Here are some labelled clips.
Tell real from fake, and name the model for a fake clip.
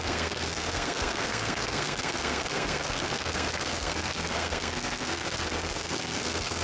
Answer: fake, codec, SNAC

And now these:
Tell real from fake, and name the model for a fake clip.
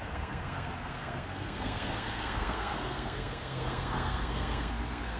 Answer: fake, codec, SNAC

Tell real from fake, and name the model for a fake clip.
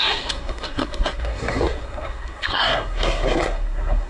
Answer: fake, codec, SNAC